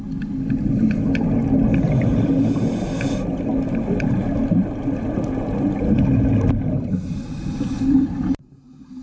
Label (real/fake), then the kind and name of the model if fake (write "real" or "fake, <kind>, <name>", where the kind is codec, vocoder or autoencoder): real